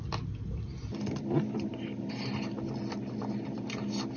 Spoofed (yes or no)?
no